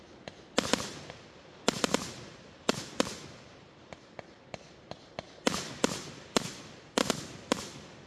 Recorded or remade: recorded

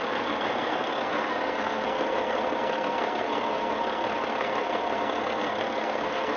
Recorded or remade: remade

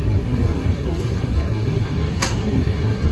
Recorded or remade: remade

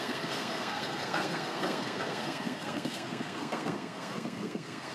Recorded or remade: remade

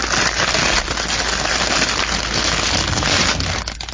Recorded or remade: recorded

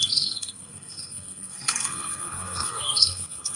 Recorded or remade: remade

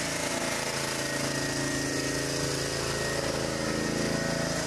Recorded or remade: recorded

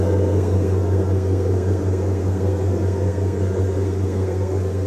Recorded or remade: remade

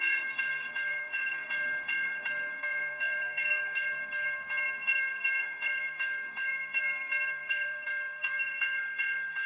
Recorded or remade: remade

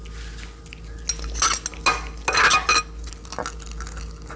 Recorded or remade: recorded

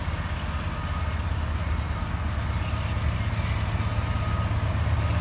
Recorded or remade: recorded